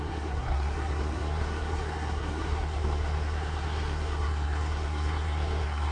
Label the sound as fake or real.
fake